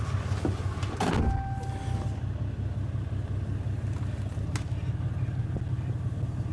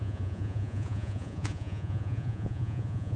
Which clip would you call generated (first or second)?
second